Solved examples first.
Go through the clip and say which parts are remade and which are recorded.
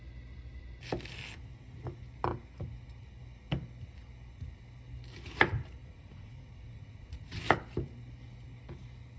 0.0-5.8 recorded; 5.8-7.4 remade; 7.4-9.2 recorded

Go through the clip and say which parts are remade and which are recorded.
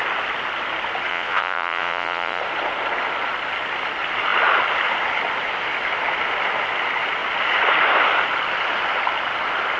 0.0-1.1 recorded; 1.1-2.4 remade; 2.4-9.8 recorded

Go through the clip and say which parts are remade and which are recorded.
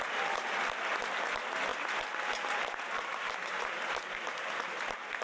0.0-5.2 recorded